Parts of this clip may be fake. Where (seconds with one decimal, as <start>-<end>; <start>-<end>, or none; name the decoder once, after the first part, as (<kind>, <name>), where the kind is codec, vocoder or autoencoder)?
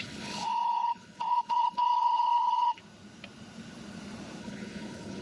0.0-2.8 (codec, HILCodec); 4.4-5.2